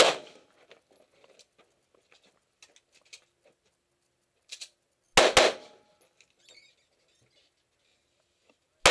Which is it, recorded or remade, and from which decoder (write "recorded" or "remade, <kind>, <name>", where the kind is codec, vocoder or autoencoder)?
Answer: recorded